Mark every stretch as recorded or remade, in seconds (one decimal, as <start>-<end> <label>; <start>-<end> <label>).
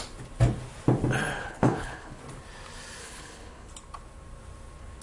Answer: 0.0-1.4 recorded; 1.4-2.2 remade; 2.2-3.0 recorded; 3.0-3.7 remade; 3.7-5.0 recorded